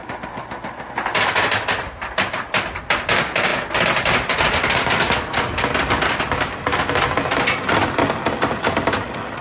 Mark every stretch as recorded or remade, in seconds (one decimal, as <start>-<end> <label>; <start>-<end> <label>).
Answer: 0.0-9.4 recorded